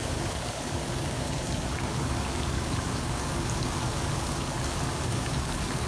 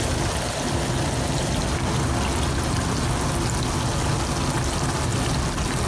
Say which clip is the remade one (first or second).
first